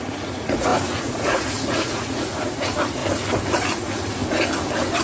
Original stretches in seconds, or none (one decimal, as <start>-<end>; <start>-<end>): 3.0-3.5; 4.2-5.0